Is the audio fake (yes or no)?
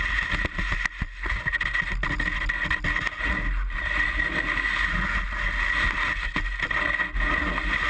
no